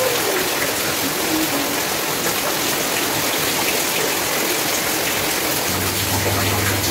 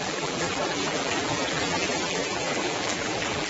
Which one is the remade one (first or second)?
second